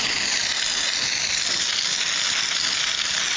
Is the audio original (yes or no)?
yes